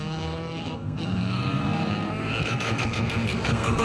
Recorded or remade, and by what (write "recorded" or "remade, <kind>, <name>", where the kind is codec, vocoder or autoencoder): remade, codec, SNAC